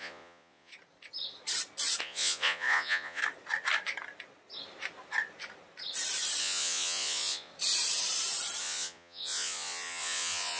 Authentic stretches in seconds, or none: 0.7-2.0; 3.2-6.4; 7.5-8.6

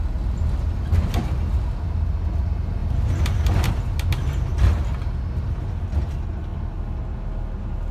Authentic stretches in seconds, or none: 0.0-7.9

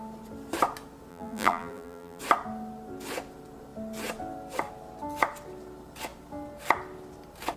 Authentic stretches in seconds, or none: 0.0-1.1; 2.2-7.6